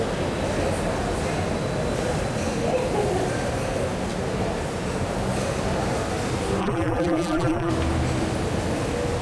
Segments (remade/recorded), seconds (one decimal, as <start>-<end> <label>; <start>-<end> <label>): 0.0-6.6 recorded; 6.6-7.7 remade; 7.7-9.2 recorded